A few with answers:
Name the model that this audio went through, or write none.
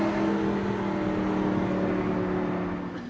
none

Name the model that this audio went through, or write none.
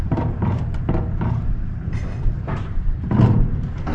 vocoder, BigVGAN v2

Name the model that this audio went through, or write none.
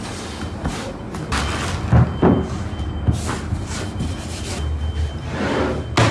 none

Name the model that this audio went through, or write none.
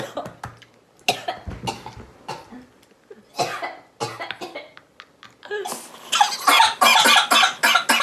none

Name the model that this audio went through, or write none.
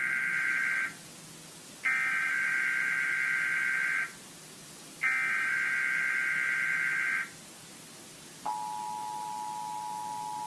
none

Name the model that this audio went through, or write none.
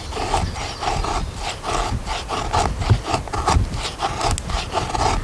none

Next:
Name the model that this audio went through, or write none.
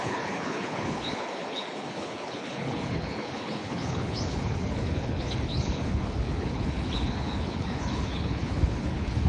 codec, HILCodec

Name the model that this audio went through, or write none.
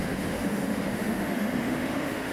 autoencoder, DAC-VAE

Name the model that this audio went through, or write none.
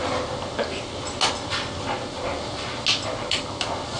none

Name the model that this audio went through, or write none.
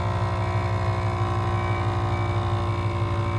none